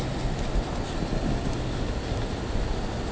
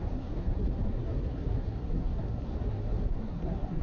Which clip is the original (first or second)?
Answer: first